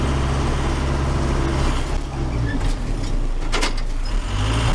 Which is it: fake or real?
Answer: real